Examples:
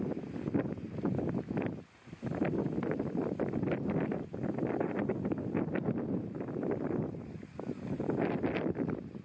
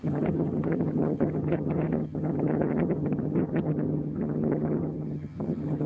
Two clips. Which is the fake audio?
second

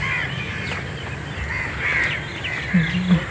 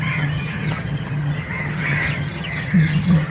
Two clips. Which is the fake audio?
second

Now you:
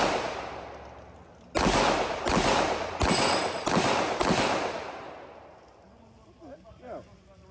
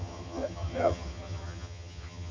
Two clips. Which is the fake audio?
second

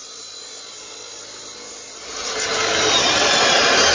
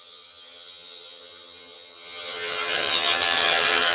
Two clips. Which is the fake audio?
second